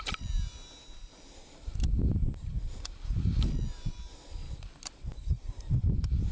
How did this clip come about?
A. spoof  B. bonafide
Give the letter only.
B